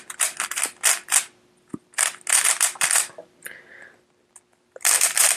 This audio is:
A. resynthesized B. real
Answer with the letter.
B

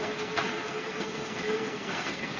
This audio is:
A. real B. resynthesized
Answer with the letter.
B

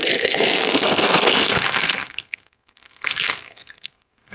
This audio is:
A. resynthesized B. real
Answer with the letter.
A